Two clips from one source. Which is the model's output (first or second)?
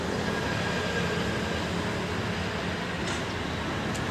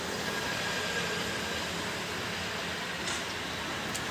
second